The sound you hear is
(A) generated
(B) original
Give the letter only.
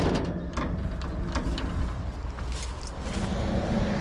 B